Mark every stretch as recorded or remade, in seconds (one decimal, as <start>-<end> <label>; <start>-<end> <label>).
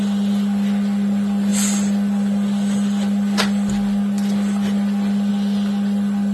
0.0-6.3 recorded